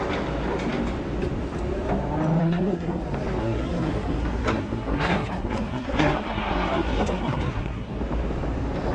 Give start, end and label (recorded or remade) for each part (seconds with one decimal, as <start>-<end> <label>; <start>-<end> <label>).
0.0-2.4 recorded; 2.4-3.0 remade; 3.0-3.4 recorded; 3.4-8.0 remade; 8.0-8.9 recorded